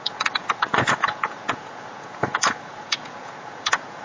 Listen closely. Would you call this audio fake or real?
fake